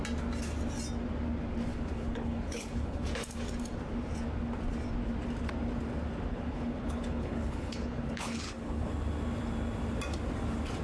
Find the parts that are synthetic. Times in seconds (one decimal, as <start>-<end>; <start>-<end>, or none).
1.7-3.1; 6.3-8.9